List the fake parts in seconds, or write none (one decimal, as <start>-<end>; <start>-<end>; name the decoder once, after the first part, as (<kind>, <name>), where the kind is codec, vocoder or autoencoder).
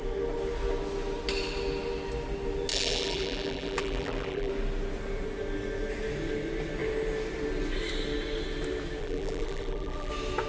2.7-4.5 (vocoder, BigVGAN v2); 9.0-10.1